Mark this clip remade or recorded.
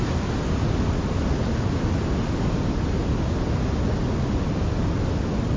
recorded